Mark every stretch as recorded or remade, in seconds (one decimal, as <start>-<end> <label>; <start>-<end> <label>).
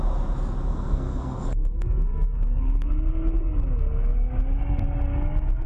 0.0-0.7 recorded; 0.7-2.9 remade; 2.9-5.7 recorded